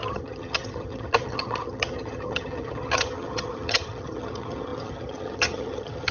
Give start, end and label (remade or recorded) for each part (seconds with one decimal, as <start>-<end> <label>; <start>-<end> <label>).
0.0-6.1 remade